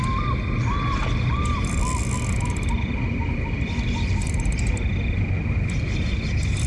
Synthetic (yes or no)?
no